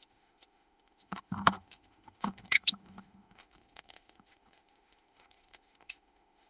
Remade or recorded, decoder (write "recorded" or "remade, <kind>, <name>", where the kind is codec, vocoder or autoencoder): remade, autoencoder, DAC-VAE